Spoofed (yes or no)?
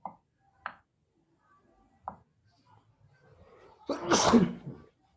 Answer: no